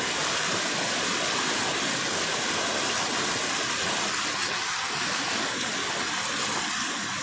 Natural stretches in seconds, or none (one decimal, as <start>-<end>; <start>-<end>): 0.0-4.3; 4.9-7.2